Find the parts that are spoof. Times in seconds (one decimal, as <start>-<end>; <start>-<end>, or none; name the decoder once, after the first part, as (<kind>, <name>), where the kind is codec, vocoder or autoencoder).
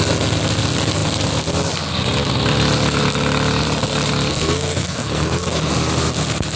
4.3-5.7 (codec, SNAC)